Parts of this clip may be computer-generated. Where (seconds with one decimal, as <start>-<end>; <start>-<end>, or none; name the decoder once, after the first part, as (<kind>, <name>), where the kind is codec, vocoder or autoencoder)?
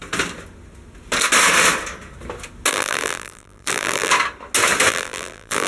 2.7-4.1 (vocoder, BigVGAN v2); 4.9-5.7